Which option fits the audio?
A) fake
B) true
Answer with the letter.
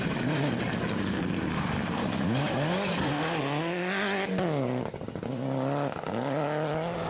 B